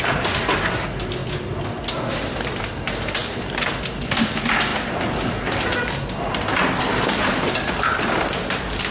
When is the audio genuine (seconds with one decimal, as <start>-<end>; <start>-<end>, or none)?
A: 0.0-4.7; 5.3-8.9